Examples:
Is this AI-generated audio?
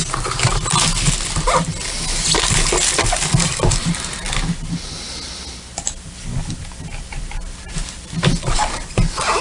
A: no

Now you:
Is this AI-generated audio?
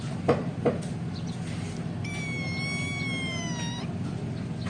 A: no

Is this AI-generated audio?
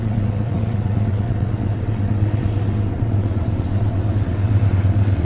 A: yes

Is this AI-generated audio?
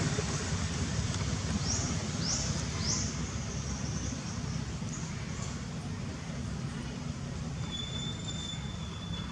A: yes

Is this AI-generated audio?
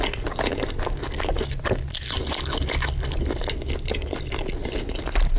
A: no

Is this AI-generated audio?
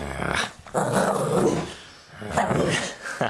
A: no